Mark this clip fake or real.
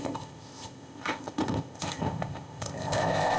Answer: fake